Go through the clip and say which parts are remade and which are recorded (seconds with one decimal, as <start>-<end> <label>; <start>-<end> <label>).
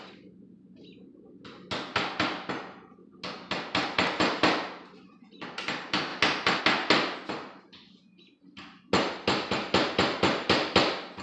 0.0-11.2 recorded